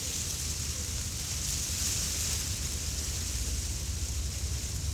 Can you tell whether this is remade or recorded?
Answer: remade